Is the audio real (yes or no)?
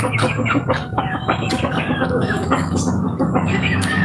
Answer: no